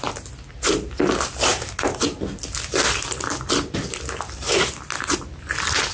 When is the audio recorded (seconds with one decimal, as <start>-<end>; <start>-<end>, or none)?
0.0-5.9